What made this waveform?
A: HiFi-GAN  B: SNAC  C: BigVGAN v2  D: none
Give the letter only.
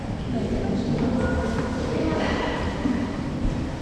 D